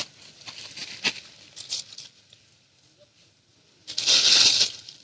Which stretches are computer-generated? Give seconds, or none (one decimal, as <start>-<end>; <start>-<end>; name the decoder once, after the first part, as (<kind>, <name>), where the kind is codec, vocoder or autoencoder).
none